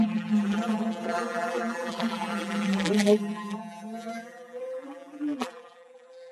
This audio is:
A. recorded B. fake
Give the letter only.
B